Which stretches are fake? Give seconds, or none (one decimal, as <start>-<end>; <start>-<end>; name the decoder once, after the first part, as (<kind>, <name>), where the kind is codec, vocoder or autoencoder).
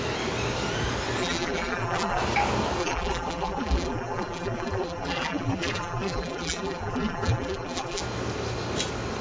1.2-2.2 (vocoder, BigVGAN v2); 2.8-8.0